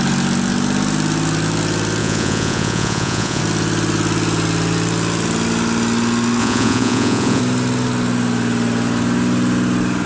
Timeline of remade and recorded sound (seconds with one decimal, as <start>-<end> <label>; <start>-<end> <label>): 0.0-2.0 recorded; 2.0-3.4 remade; 3.4-6.4 recorded; 6.4-7.4 remade; 7.4-10.1 recorded